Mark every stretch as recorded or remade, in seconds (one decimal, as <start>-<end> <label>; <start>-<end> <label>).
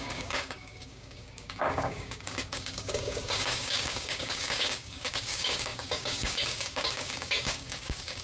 0.0-8.2 remade